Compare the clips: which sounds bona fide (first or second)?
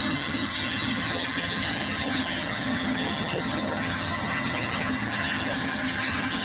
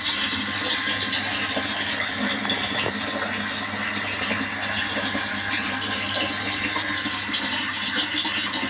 second